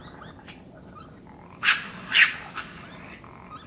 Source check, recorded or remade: recorded